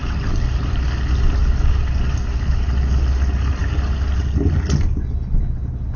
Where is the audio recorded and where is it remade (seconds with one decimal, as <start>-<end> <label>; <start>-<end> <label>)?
0.0-6.0 recorded